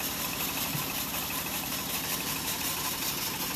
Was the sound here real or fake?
real